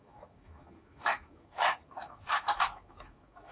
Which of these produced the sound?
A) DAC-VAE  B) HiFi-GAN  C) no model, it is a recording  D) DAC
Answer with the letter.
A